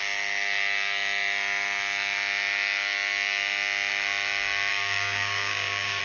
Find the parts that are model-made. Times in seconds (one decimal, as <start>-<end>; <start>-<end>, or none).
4.7-6.0